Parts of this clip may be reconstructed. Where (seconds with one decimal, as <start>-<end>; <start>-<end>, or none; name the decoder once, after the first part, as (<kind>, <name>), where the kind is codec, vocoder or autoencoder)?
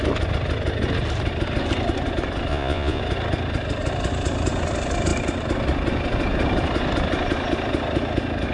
2.5-3.0 (vocoder, Vocos)